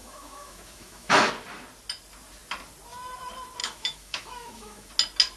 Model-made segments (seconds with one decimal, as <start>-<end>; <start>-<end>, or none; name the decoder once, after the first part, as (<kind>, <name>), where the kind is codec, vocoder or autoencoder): 0.0-1.3 (autoencoder, DAC-VAE); 3.6-4.9